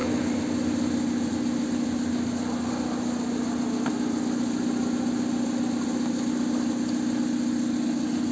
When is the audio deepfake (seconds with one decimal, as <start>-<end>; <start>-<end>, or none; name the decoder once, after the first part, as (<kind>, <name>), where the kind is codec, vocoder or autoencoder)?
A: none